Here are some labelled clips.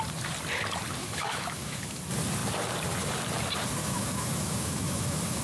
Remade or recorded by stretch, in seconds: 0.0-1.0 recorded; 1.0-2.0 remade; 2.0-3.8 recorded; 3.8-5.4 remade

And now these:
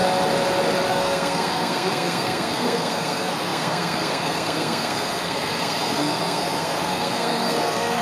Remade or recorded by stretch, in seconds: 0.0-0.9 recorded; 0.9-8.0 remade

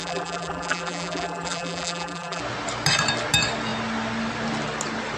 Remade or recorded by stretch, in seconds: 0.0-2.4 remade; 2.4-5.2 recorded

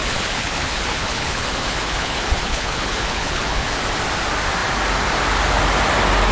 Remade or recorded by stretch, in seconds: 0.0-3.8 remade; 3.8-6.3 recorded

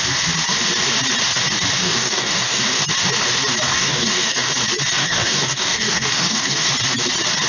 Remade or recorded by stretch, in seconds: 0.0-1.8 recorded; 1.8-2.6 remade; 2.6-3.7 recorded; 3.7-4.5 remade; 4.5-5.0 recorded; 5.0-6.7 remade; 6.7-7.5 recorded